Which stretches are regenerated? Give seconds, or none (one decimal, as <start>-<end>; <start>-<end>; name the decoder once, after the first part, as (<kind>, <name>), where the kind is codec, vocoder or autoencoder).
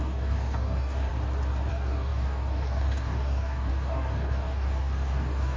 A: 0.0-1.1 (codec, DAC); 1.7-5.6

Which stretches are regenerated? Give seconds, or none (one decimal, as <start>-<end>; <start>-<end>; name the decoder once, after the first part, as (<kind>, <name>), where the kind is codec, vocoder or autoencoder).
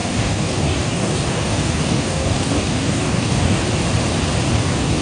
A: 0.0-3.6 (codec, DAC); 4.5-5.0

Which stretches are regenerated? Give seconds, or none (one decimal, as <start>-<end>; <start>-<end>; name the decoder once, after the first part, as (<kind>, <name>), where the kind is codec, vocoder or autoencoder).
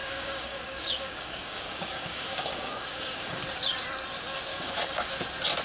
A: 0.0-3.4 (codec, DAC); 4.5-5.1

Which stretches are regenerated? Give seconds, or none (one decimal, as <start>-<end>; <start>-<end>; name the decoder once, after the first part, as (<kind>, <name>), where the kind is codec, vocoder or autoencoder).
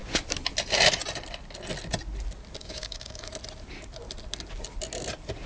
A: 2.6-3.3 (codec, DAC)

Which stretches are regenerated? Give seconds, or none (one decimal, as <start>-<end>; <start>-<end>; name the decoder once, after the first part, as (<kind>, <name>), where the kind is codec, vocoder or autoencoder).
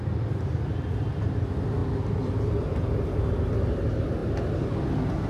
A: none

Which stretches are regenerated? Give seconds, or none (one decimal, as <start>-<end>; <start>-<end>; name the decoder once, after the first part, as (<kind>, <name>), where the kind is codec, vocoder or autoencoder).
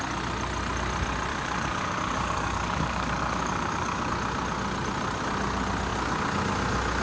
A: 1.3-4.1 (codec, DAC)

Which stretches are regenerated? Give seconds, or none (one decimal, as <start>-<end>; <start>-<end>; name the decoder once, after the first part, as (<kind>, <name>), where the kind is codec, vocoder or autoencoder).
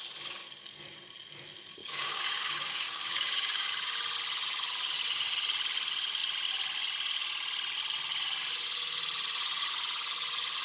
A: 1.8-3.7 (codec, DAC)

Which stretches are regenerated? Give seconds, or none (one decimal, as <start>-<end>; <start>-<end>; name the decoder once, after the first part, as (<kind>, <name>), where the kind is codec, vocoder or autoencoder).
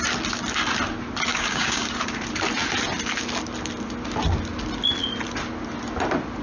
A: 1.3-1.9 (codec, DAC)